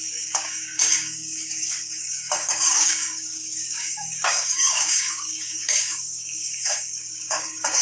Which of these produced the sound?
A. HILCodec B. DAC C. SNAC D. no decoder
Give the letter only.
B